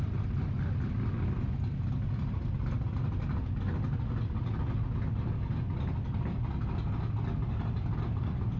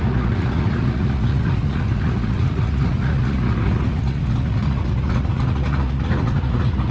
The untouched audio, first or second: first